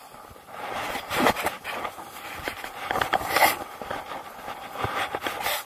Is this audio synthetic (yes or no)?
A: no